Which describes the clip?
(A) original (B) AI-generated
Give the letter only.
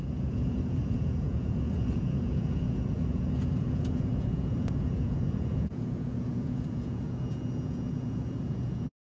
B